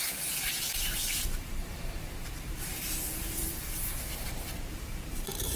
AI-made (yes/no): yes